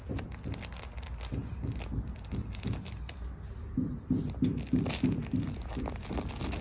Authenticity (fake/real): real